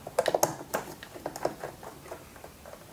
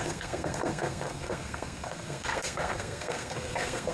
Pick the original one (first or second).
first